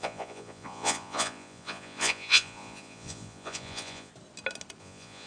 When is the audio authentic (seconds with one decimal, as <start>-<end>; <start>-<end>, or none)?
4.1-4.8